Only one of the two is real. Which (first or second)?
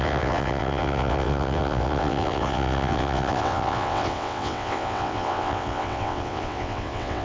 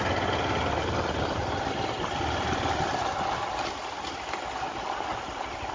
second